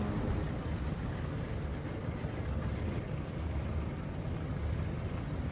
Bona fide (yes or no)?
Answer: yes